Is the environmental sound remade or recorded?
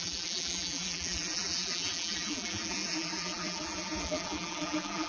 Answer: remade